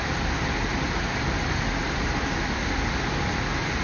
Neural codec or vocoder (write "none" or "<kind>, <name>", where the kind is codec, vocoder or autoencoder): none